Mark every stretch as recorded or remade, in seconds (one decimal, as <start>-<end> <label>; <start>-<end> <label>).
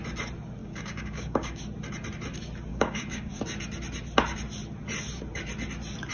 0.0-0.6 recorded; 0.6-1.6 remade; 1.6-2.7 recorded; 2.7-3.4 remade; 3.4-6.1 recorded